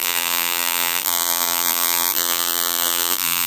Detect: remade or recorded remade